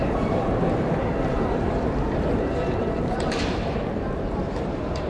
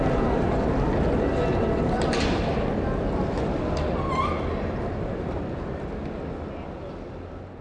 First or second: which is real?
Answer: second